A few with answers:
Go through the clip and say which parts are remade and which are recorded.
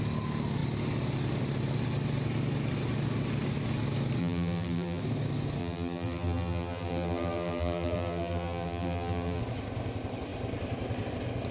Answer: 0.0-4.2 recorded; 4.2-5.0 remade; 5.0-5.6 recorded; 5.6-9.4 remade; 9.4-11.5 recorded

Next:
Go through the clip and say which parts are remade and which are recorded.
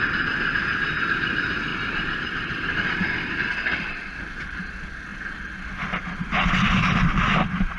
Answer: 0.0-1.7 recorded; 1.7-4.6 remade; 4.6-7.8 recorded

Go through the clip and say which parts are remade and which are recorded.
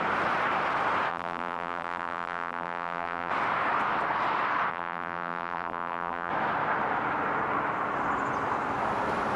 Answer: 0.0-1.1 recorded; 1.1-3.3 remade; 3.3-4.7 recorded; 4.7-6.3 remade; 6.3-9.4 recorded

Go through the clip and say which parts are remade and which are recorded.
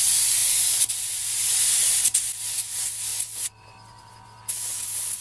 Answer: 0.0-5.2 recorded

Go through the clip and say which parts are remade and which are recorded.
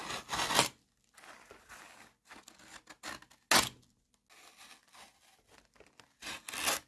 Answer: 0.0-6.9 recorded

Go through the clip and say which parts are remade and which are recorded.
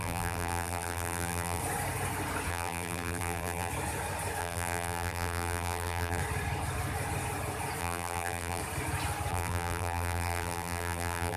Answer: 0.0-1.6 remade; 1.6-2.5 recorded; 2.5-3.7 remade; 3.7-4.4 recorded; 4.4-6.2 remade; 6.2-7.8 recorded; 7.8-8.6 remade; 8.6-9.3 recorded; 9.3-11.4 remade